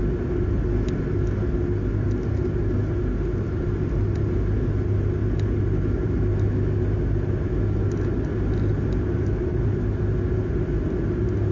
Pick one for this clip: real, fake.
real